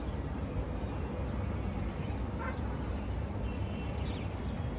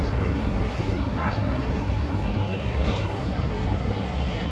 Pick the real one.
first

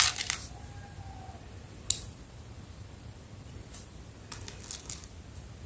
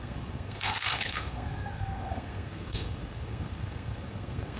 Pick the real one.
first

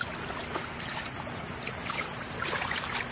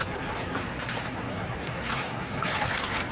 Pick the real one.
first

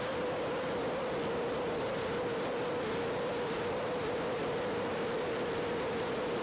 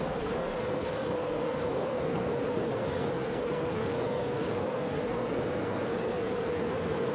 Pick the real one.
first